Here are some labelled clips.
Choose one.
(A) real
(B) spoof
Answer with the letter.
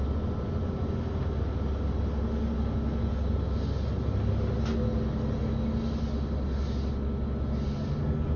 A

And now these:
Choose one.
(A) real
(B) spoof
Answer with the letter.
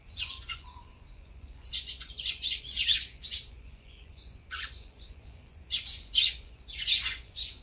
B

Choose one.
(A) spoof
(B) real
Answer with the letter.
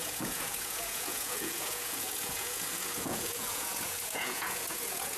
A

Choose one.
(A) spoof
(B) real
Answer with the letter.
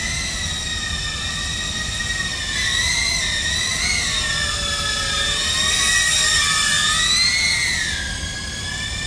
B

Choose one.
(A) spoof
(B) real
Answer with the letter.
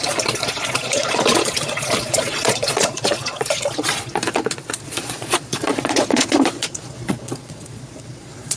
A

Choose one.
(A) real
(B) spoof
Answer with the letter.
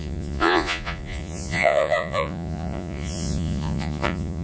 B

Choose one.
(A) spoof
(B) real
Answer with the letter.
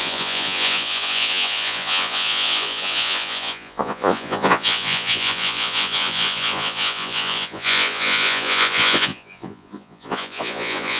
A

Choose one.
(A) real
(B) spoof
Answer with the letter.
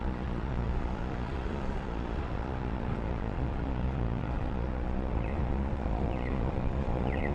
B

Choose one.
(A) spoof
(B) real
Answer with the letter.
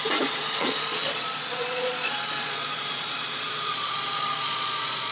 A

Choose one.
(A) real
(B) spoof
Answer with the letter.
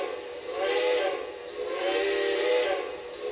A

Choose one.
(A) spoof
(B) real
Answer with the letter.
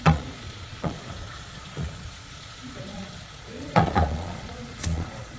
A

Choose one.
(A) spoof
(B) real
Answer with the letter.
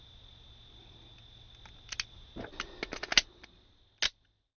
B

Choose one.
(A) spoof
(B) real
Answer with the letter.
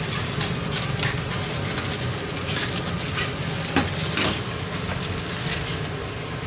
B